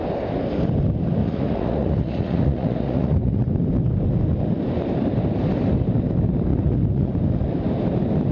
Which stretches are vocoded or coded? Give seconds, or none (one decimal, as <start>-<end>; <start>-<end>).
1.2-3.4; 6.5-7.1